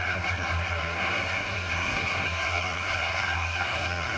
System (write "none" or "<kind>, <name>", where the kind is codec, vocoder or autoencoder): codec, SNAC